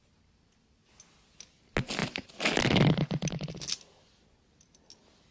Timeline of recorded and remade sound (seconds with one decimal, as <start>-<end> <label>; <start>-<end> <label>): 0.0-5.3 recorded